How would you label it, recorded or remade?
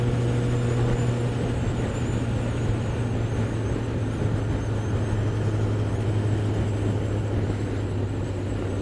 recorded